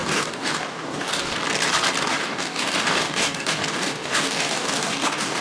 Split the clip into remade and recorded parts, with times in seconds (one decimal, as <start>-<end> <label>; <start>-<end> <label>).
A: 0.0-1.4 remade; 1.4-2.1 recorded; 2.1-5.4 remade